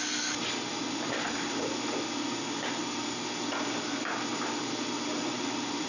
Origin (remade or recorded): recorded